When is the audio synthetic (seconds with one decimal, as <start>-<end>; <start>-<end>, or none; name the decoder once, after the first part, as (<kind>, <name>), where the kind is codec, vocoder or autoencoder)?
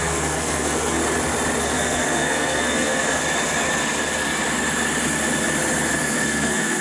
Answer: 0.0-1.0 (codec, SNAC); 1.6-3.2; 6.0-6.8